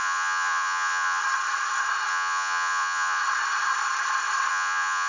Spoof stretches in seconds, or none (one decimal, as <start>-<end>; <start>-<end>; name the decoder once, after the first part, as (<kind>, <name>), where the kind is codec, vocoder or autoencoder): 0.0-1.2 (vocoder, Vocos); 2.1-3.2; 4.5-5.1